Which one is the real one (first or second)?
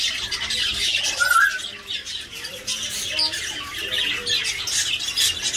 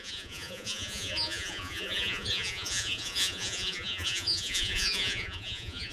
first